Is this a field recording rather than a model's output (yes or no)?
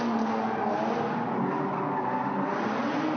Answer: yes